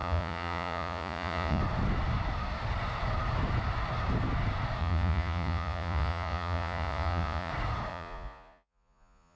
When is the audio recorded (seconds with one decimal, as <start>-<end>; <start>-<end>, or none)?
1.6-4.8; 7.5-7.9